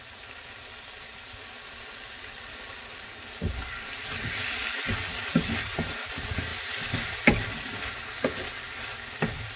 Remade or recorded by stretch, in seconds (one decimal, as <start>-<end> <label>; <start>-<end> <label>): 0.0-9.6 recorded